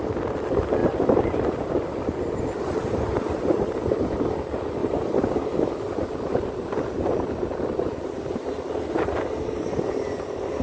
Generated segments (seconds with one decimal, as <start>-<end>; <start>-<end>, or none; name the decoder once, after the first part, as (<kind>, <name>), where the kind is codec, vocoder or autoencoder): 0.8-4.0 (vocoder, BigVGAN v2); 4.8-8.9